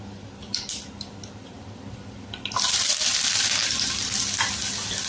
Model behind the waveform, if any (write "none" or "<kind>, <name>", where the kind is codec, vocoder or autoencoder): vocoder, BigVGAN v2